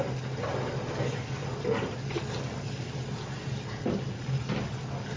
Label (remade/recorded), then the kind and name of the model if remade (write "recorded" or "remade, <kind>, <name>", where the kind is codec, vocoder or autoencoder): recorded